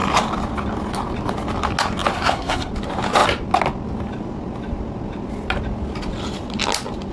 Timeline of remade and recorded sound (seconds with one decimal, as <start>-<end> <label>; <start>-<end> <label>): 0.0-2.1 recorded; 2.1-2.7 remade; 2.7-7.1 recorded